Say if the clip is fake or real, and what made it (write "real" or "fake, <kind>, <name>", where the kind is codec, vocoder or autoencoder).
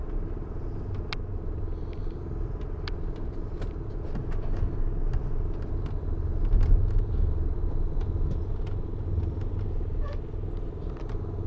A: real